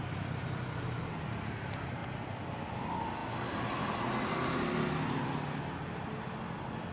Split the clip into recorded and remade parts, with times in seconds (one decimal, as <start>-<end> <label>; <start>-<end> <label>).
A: 0.0-6.9 recorded